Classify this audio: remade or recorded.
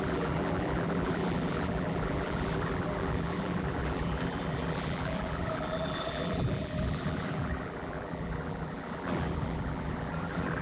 remade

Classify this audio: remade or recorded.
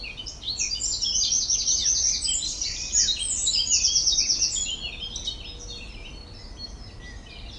recorded